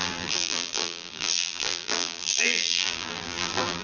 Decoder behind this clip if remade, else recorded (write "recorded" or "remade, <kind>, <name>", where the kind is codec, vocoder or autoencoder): remade, vocoder, BigVGAN v2